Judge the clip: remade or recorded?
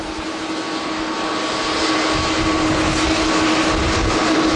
recorded